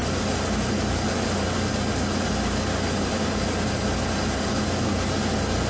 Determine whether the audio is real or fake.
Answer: real